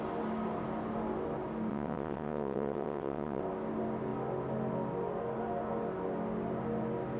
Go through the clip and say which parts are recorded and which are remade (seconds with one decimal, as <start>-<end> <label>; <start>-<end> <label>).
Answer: 0.0-1.7 recorded; 1.7-3.4 remade; 3.4-7.2 recorded